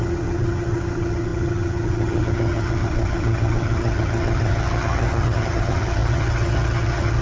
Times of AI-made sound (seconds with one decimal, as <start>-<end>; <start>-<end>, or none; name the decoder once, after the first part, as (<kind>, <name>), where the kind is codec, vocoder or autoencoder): 0.0-7.2 (vocoder, HiFi-GAN)